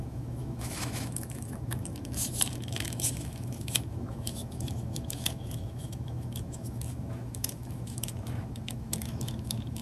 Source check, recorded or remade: remade